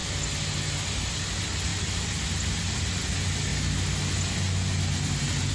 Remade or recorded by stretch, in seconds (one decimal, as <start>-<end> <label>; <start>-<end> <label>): 0.0-5.5 recorded